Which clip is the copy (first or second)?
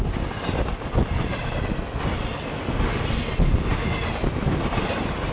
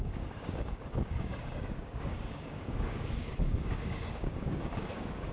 second